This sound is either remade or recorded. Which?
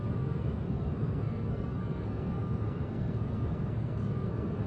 remade